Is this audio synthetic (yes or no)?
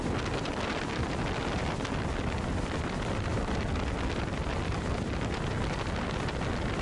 no